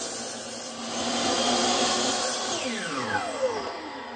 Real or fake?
real